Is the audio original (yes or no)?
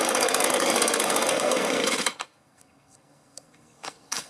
no